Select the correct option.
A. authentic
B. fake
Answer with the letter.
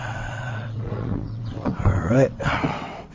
B